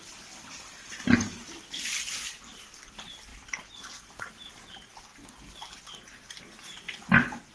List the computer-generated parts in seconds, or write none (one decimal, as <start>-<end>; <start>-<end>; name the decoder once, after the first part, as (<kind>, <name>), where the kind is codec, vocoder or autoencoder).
2.2-2.9 (vocoder, BigVGAN v2)